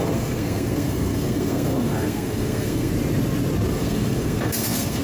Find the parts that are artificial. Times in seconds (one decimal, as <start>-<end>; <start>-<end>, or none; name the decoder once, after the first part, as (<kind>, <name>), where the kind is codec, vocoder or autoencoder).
0.0-2.9 (codec, SNAC); 3.7-5.0